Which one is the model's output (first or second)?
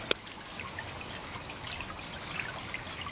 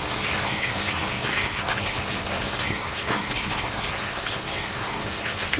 second